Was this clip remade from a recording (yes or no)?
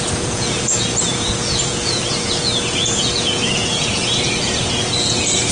yes